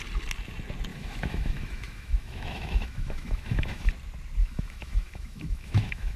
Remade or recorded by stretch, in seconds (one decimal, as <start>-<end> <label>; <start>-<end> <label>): 0.0-0.9 recorded; 0.9-3.9 remade; 3.9-4.4 recorded; 4.4-6.2 remade